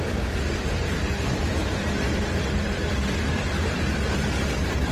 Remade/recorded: remade